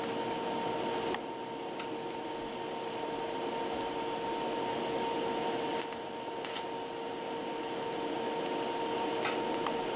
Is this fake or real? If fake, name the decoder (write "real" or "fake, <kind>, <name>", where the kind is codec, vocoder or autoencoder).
real